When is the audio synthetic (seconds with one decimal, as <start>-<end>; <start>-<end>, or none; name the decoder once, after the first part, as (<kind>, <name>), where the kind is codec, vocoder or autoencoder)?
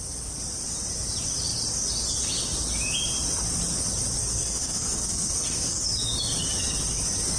4.2-5.8 (codec, SNAC)